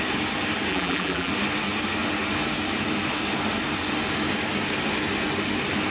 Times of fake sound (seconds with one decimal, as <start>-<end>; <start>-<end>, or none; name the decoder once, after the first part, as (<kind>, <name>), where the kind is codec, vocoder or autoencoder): 0.7-1.3 (vocoder, BigVGAN v2)